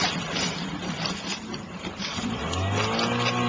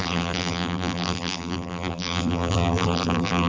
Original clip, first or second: first